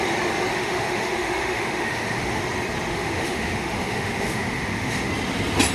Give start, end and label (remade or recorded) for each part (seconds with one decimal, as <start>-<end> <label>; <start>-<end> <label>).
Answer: 0.0-0.5 recorded; 0.5-2.4 remade; 2.4-2.9 recorded; 2.9-5.1 remade; 5.1-5.7 recorded